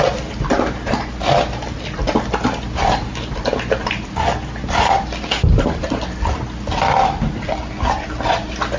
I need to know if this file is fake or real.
real